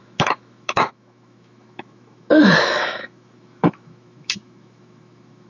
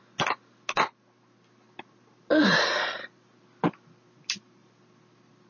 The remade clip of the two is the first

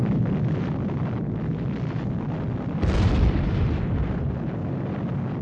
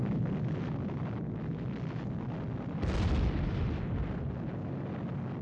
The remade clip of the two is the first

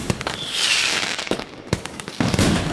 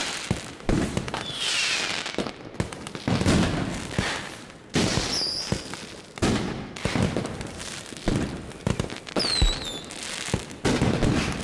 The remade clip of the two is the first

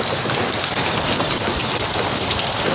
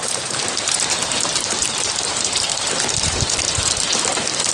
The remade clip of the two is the second